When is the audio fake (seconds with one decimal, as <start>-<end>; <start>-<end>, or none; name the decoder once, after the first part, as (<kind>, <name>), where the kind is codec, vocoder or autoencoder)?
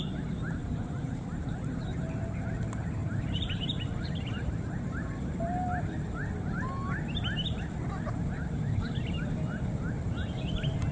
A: 0.6-2.1 (vocoder, BigVGAN v2); 3.0-5.2